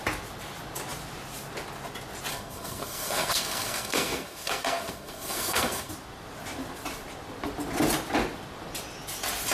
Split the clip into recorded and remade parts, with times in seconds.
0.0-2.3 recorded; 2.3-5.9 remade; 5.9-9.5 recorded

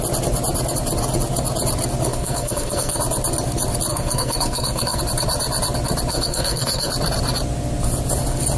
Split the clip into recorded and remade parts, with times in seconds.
0.0-2.1 recorded; 2.1-3.0 remade; 3.0-3.9 recorded; 3.9-5.0 remade; 5.0-6.1 recorded; 6.1-6.9 remade; 6.9-8.6 recorded

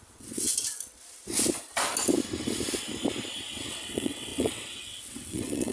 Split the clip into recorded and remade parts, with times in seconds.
0.0-0.5 remade; 0.5-3.7 recorded; 3.7-5.7 remade

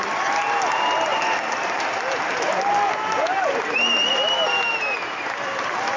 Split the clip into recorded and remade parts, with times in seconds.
0.0-6.0 recorded

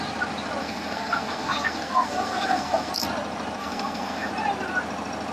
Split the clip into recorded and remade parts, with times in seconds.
0.0-0.6 recorded; 0.6-2.9 remade; 2.9-3.6 recorded; 3.6-4.3 remade; 4.3-5.3 recorded

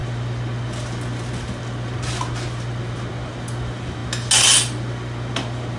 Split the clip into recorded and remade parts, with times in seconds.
0.0-5.8 recorded

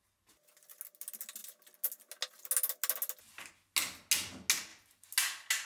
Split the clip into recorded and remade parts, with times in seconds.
0.0-5.7 recorded

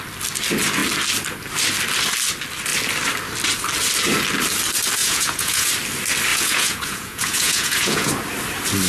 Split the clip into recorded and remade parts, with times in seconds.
0.0-5.0 recorded; 5.0-5.7 remade; 5.7-6.3 recorded; 6.3-8.1 remade; 8.1-8.9 recorded